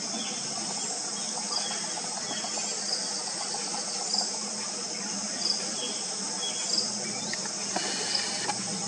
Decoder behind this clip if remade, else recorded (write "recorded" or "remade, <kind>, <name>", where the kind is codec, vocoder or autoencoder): recorded